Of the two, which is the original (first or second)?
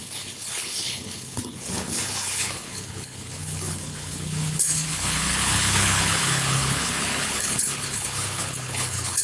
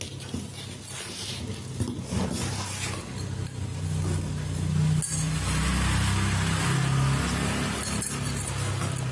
second